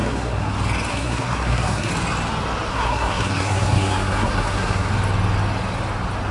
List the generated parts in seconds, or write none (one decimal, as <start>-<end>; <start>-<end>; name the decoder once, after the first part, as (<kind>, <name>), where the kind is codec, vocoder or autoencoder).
0.0-0.5 (codec, SNAC); 0.9-1.9; 2.7-4.9